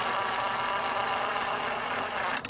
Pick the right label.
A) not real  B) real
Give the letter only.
B